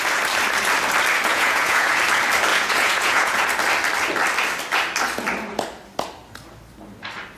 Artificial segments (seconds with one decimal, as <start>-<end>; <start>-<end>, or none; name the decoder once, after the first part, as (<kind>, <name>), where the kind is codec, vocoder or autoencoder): 1.3-1.9 (vocoder, Vocos); 2.5-3.4